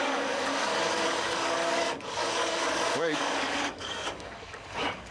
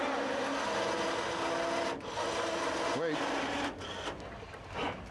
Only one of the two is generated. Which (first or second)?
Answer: first